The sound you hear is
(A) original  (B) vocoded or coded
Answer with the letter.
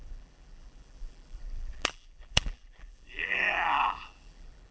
B